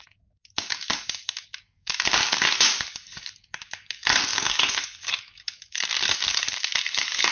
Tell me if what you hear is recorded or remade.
remade